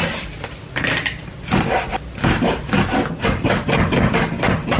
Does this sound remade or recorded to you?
remade